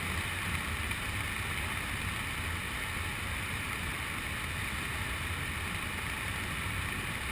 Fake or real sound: real